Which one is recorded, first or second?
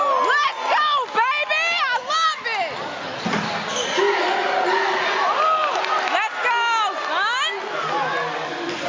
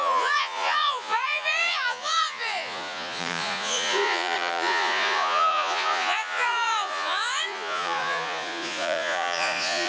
first